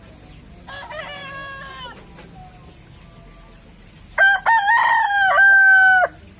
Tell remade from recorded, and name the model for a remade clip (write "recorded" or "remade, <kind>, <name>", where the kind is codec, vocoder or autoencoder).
recorded